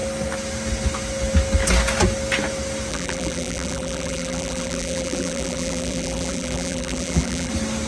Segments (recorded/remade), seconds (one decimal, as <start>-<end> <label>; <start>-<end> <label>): 0.0-2.9 recorded; 2.9-7.5 remade; 7.5-7.9 recorded